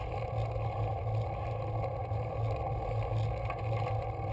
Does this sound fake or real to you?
real